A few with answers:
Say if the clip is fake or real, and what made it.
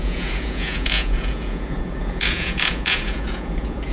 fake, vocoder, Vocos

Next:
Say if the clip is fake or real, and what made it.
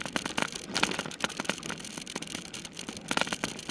real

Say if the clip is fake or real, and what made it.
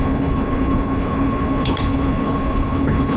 fake, codec, HILCodec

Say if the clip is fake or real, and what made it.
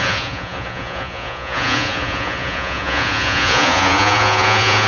fake, vocoder, Vocos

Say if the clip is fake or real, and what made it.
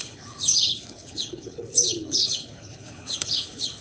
fake, codec, HILCodec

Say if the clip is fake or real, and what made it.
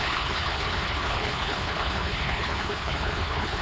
fake, codec, HILCodec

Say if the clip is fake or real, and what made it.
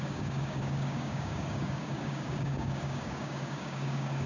fake, codec, DAC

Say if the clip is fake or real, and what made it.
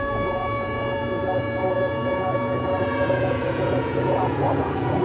fake, vocoder, Vocos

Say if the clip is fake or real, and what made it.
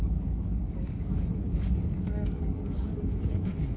fake, codec, DAC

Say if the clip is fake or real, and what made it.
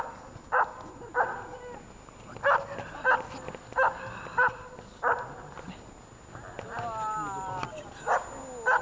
real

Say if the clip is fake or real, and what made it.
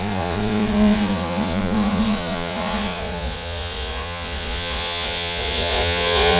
fake, vocoder, Vocos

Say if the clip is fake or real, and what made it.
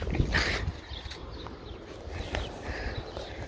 real